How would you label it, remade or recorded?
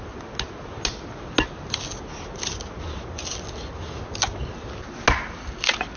recorded